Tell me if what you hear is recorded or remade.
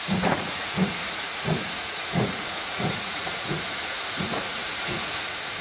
remade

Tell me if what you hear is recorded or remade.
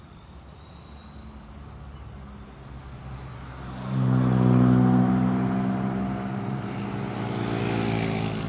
recorded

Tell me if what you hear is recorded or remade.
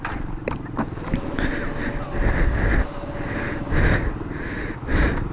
recorded